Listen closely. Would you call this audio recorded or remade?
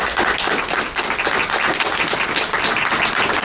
recorded